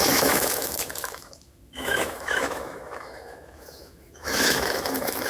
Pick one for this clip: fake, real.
fake